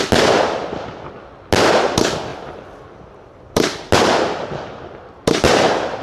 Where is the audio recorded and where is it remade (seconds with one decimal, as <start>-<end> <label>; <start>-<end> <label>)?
0.0-6.0 recorded